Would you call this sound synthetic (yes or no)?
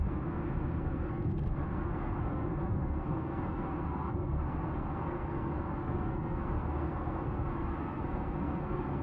yes